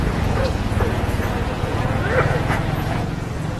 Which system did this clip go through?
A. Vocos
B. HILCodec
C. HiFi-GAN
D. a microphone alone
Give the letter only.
A